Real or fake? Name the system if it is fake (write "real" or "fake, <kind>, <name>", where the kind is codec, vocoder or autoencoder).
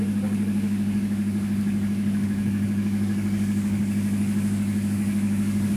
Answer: fake, codec, DAC